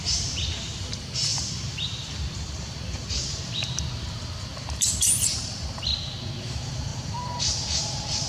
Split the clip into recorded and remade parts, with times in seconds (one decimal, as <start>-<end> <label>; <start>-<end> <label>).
0.0-5.9 remade; 5.9-6.4 recorded; 6.4-8.3 remade